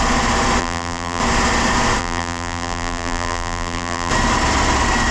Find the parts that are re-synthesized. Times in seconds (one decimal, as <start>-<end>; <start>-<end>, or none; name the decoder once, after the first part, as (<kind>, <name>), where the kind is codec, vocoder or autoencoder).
0.6-1.2 (vocoder, BigVGAN v2); 2.0-4.1